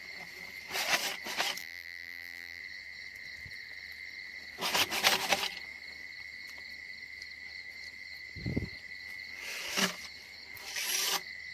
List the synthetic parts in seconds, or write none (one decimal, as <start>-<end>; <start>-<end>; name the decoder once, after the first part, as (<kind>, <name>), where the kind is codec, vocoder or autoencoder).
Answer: 1.6-2.6 (vocoder, BigVGAN v2)